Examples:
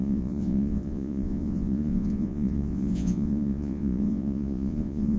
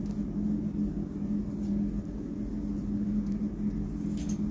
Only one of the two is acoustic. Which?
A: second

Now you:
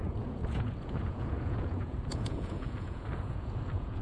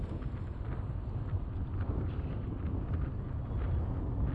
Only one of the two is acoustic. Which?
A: second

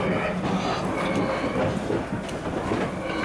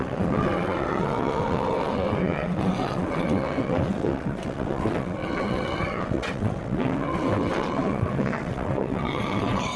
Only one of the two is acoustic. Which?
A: first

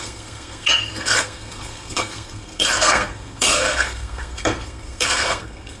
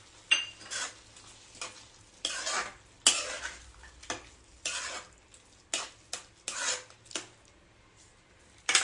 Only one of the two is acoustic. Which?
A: second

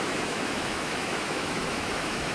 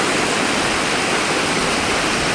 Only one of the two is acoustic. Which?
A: second